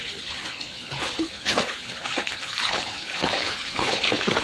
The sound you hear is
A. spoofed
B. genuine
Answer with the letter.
A